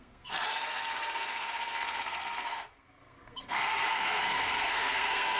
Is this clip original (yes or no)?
no